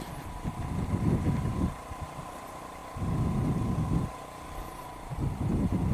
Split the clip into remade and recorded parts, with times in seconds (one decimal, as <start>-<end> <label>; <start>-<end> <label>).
0.0-2.8 remade; 2.8-5.1 recorded; 5.1-5.9 remade